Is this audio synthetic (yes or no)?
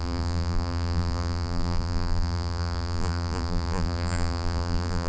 yes